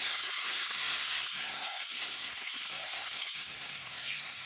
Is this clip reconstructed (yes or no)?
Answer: yes